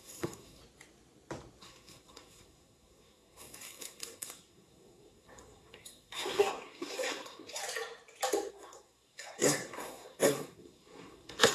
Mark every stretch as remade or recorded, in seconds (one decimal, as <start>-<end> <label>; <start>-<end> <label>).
0.0-0.6 remade; 0.6-1.6 recorded; 1.6-7.6 remade; 7.6-8.5 recorded; 8.5-11.5 remade